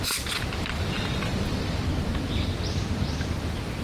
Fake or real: real